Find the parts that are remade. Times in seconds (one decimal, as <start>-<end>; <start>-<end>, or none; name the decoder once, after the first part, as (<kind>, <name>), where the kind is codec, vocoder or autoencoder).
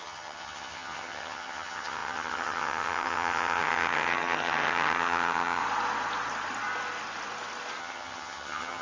0.0-5.6 (vocoder, HiFi-GAN); 7.8-8.8